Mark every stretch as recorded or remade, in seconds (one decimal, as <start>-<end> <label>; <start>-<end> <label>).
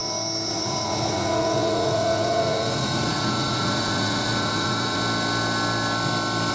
0.0-0.5 recorded; 0.5-5.0 remade; 5.0-6.5 recorded